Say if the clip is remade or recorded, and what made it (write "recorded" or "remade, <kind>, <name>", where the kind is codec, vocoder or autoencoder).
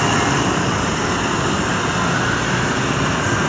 recorded